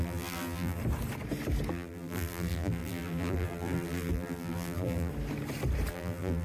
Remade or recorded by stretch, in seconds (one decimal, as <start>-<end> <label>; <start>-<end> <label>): 0.0-0.8 remade; 0.8-1.7 recorded; 1.7-5.1 remade; 5.1-5.9 recorded; 5.9-6.4 remade